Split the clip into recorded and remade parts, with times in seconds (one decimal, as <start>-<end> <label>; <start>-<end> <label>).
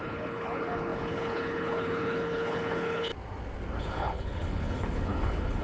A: 0.0-3.1 remade; 3.1-3.8 recorded; 3.8-5.6 remade